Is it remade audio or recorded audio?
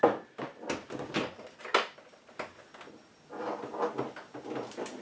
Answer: recorded